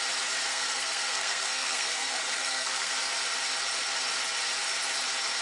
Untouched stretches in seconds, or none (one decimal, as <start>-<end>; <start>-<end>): 0.0-0.5; 2.9-5.4

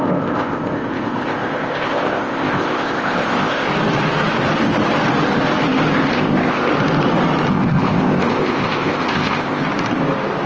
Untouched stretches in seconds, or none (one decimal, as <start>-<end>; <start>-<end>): 3.7-6.1; 6.7-7.5; 9.6-10.5

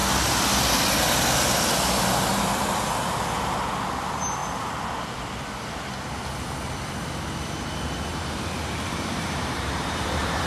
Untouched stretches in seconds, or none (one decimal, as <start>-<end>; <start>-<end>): 0.0-8.1

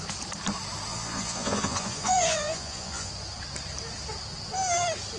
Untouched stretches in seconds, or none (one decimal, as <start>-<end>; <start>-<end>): 0.0-0.9; 3.1-5.2

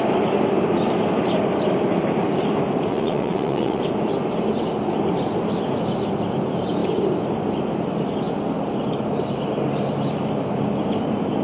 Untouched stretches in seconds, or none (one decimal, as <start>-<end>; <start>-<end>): 0.0-2.9; 3.8-11.4

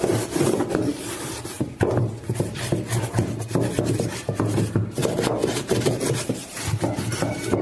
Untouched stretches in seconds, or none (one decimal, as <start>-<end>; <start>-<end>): 0.0-0.9; 2.6-3.6; 6.7-7.6